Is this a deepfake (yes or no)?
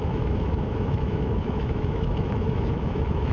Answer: yes